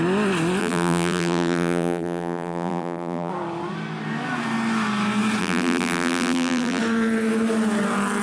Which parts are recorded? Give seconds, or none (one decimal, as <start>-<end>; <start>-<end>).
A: 0.0-0.6; 3.3-5.4; 6.8-8.2